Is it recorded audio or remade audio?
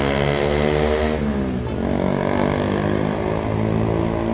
recorded